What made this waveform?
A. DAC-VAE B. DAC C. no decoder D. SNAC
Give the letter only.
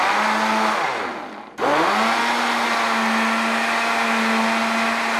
C